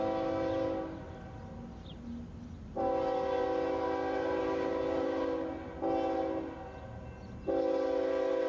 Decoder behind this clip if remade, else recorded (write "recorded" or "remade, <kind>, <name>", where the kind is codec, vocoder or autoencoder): recorded